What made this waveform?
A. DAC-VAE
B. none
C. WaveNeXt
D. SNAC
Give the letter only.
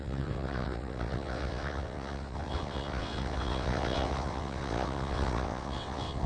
C